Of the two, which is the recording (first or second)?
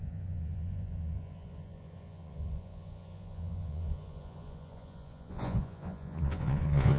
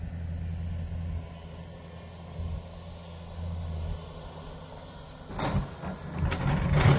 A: second